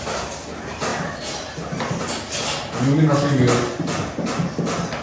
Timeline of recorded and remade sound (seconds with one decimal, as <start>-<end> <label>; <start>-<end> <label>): 0.0-5.0 recorded